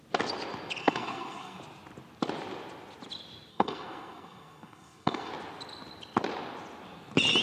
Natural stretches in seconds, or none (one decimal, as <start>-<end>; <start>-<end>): 0.0-0.8; 1.6-3.5; 5.3-7.4